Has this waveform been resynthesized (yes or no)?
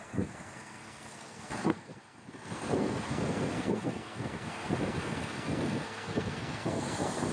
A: yes